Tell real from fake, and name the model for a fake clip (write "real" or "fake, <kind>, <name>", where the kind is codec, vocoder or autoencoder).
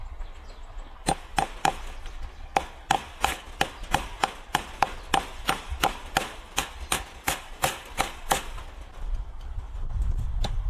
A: real